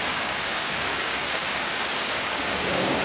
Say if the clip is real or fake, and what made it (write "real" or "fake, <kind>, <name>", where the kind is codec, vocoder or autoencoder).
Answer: fake, codec, DAC